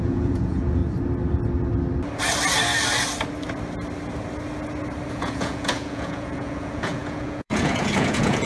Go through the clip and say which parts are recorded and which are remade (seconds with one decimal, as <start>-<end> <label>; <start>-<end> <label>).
0.0-0.8 remade; 0.8-5.1 recorded; 5.1-8.5 remade

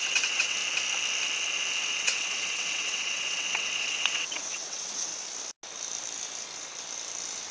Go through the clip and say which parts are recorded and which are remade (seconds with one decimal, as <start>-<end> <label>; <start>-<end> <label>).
0.0-0.6 remade; 0.6-1.8 recorded; 1.8-5.1 remade; 5.1-7.5 recorded

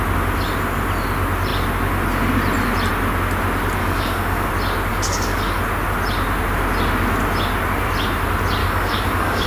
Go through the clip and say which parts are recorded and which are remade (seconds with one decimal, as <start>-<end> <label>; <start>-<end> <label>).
0.0-3.8 recorded; 3.8-4.5 remade; 4.5-4.9 recorded; 4.9-5.6 remade; 5.6-8.6 recorded; 8.6-9.5 remade

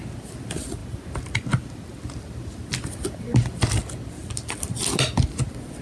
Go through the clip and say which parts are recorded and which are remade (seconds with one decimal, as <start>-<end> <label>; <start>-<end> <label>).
0.0-5.8 recorded

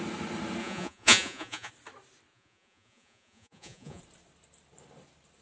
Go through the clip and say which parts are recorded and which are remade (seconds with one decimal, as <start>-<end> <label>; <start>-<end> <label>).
0.0-0.6 recorded; 0.6-1.7 remade; 1.7-2.3 recorded; 2.3-4.0 remade; 4.0-5.4 recorded

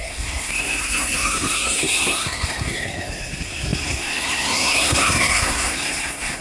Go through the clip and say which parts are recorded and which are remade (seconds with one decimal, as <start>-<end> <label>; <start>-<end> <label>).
0.0-6.4 remade